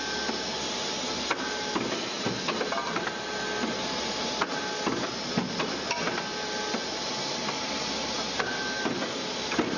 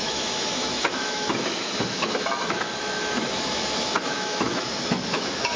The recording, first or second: first